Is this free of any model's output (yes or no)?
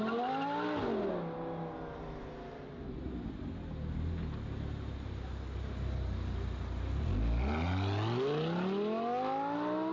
yes